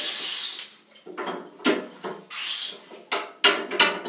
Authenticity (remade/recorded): recorded